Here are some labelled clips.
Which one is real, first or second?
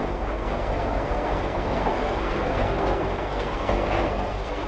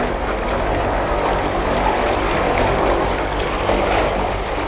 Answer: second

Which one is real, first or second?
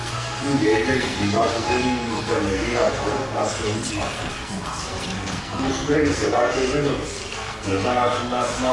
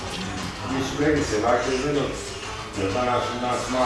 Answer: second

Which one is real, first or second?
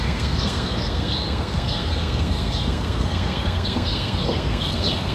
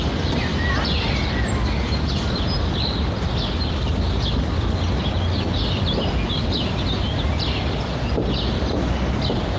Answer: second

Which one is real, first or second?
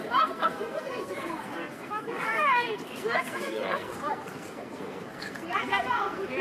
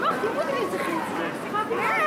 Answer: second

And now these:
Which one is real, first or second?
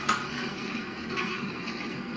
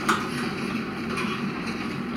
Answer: second